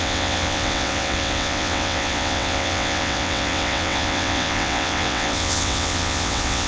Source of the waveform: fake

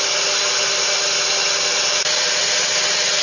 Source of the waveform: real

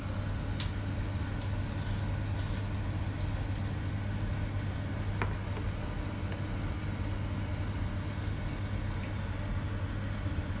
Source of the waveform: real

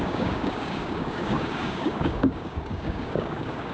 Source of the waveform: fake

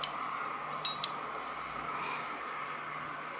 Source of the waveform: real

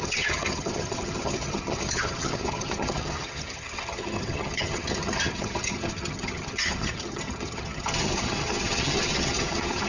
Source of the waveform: fake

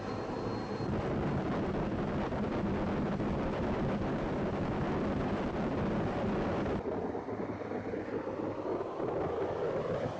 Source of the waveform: real